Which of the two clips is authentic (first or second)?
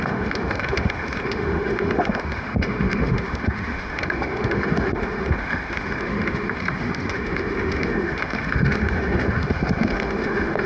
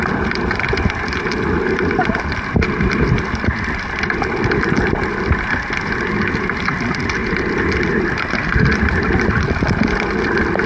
second